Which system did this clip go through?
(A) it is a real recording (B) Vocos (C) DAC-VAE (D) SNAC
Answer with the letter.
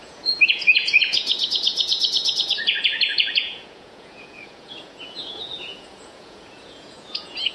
B